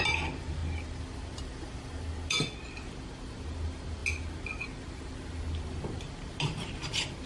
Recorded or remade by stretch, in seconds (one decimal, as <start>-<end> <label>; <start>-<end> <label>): 0.0-7.3 recorded